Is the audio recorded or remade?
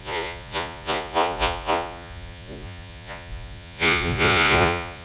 remade